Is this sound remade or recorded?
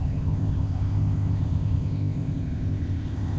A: remade